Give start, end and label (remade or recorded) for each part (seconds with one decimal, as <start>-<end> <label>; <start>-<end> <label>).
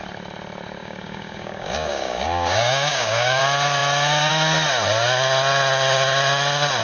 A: 0.0-0.8 recorded; 0.8-3.4 remade; 3.4-6.8 recorded